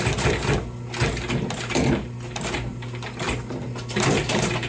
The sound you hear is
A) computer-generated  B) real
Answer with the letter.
B